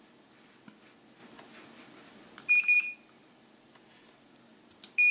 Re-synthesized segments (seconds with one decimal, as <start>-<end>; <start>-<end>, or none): none